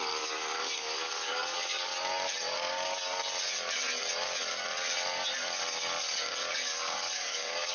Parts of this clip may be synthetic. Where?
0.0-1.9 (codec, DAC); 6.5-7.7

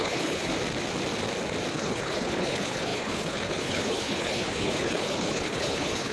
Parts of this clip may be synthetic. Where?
0.0-0.5 (codec, HILCodec); 1.7-6.1

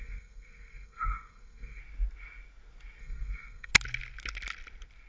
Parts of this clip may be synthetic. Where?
0.0-1.8 (codec, SNAC); 3.0-3.7

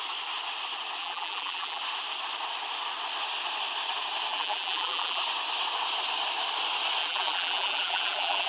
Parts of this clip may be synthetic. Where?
1.0-1.8 (vocoder, BigVGAN v2); 4.3-5.2; 7.0-8.5

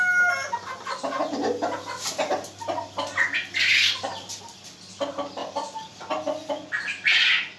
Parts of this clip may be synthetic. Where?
5.4-6.5 (vocoder, BigVGAN v2)

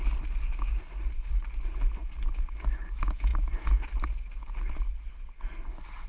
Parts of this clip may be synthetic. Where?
none